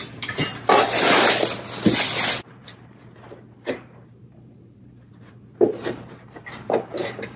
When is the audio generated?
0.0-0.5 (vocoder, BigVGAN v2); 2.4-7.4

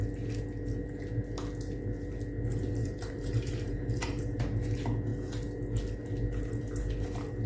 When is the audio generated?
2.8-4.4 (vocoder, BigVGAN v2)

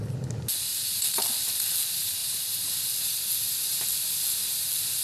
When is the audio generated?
2.2-2.7 (vocoder, BigVGAN v2)

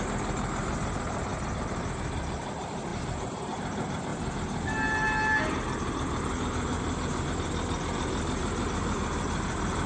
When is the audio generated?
2.9-3.4 (vocoder, BigVGAN v2); 8.4-9.9

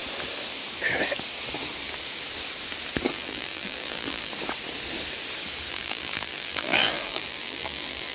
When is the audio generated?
3.1-4.3 (vocoder, BigVGAN v2); 5.7-8.1

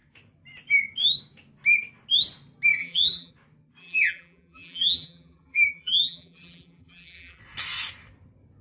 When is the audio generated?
2.8-3.3 (vocoder, BigVGAN v2); 3.8-7.4

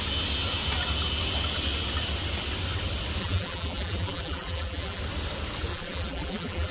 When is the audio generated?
3.2-5.0 (vocoder, BigVGAN v2); 5.7-6.7